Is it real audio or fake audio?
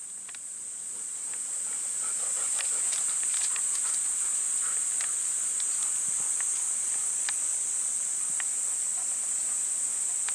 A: real